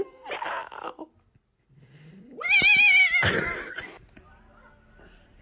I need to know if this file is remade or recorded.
recorded